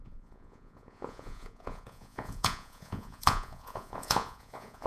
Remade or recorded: remade